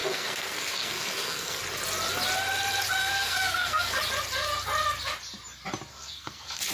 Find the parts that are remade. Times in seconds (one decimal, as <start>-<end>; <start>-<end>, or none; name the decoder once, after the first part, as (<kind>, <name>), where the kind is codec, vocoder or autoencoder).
0.0-1.6 (codec, SNAC); 3.0-4.0; 5.9-6.7